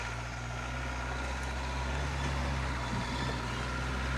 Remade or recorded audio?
recorded